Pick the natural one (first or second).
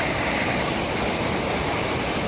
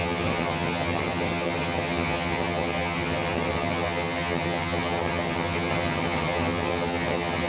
first